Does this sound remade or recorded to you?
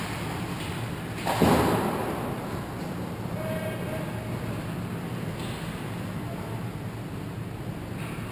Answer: recorded